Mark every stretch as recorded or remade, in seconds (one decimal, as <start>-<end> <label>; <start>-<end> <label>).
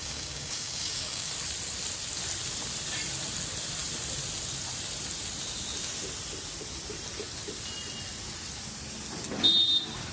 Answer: 0.0-1.3 remade; 1.3-10.1 recorded